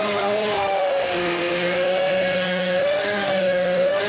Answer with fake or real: fake